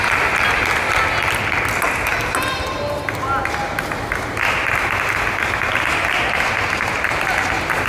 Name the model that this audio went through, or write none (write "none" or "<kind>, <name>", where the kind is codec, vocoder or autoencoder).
none